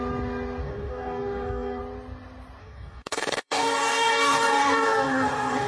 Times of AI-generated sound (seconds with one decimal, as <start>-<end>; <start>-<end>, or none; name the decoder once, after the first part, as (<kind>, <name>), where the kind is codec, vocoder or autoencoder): 0.6-1.8 (codec, DAC); 2.6-5.7